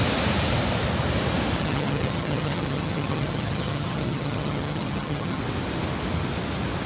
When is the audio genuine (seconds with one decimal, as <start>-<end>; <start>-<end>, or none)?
0.0-1.6; 5.4-6.9